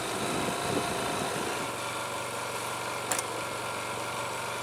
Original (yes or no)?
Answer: yes